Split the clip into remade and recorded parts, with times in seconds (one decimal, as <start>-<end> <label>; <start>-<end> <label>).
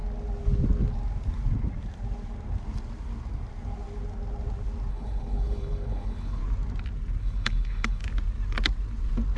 0.0-4.9 recorded; 4.9-6.4 remade; 6.4-7.2 recorded; 7.2-8.0 remade; 8.0-9.4 recorded